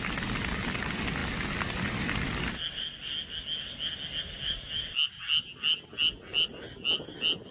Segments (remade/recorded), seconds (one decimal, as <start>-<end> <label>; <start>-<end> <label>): 0.0-7.5 recorded